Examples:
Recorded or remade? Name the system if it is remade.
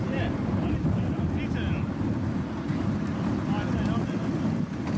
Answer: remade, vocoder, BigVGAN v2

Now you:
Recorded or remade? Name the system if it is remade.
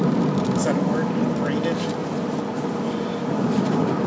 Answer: recorded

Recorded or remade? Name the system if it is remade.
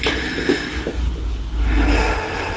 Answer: recorded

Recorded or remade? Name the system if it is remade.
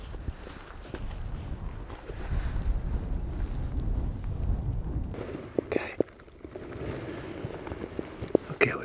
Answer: recorded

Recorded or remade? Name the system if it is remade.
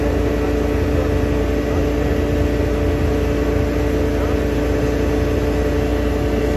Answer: recorded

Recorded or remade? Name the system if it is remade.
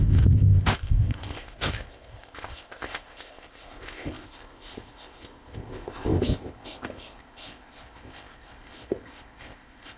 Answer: remade, codec, ZipCodec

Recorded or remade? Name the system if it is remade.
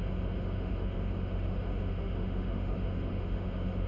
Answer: remade, autoencoder, DAC-VAE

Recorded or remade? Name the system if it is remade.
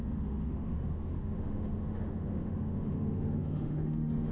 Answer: remade, autoencoder, DAC-VAE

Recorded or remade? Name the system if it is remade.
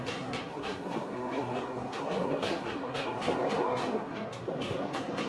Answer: remade, codec, SNAC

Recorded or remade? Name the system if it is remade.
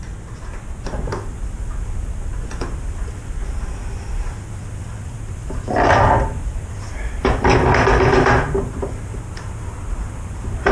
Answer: recorded